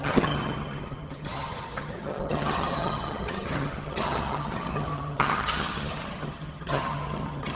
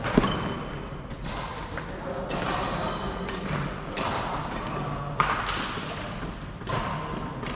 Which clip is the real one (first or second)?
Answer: second